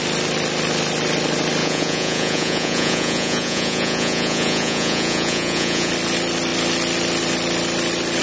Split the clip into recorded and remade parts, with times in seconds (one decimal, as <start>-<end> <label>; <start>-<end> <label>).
0.0-1.6 recorded; 1.6-5.9 remade; 5.9-8.2 recorded